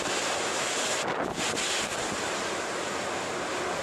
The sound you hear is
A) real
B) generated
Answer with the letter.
A